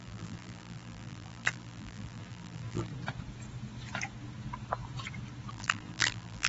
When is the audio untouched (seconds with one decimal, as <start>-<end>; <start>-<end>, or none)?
2.9-5.5